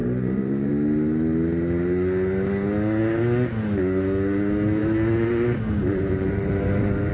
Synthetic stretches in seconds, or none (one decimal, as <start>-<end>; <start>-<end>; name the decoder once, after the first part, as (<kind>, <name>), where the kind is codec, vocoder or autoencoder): 0.0-0.7 (vocoder, BigVGAN v2); 4.8-7.1